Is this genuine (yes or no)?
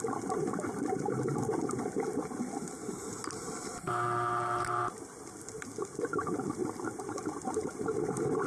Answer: yes